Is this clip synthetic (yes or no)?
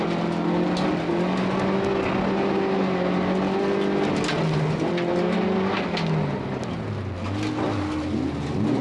no